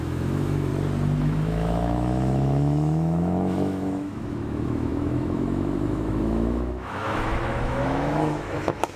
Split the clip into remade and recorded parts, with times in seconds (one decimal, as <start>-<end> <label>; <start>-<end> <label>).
0.0-0.7 remade; 0.7-1.2 recorded; 1.2-9.0 remade